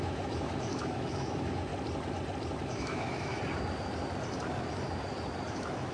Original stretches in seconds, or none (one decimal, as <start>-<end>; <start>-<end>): 1.7-2.6; 3.3-5.5